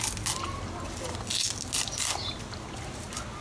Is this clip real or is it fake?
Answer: real